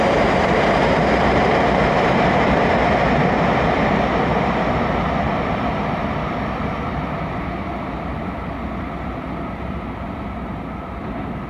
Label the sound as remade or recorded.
recorded